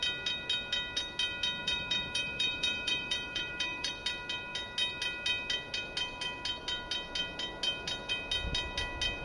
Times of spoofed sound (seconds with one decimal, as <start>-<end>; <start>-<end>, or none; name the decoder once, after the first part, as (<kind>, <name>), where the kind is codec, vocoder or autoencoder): 1.6-3.9 (vocoder, BigVGAN v2)